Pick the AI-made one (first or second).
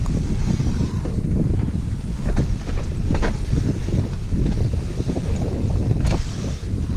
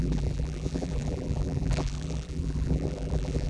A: second